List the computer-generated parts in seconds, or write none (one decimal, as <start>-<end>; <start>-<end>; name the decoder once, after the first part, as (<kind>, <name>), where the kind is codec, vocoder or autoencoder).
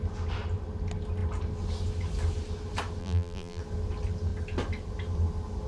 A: 3.0-3.6 (vocoder, BigVGAN v2)